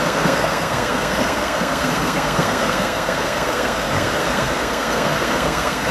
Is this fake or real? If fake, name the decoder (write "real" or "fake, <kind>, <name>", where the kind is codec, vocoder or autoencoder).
fake, codec, SNAC